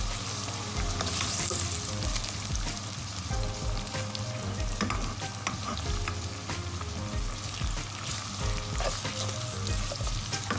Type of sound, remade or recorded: recorded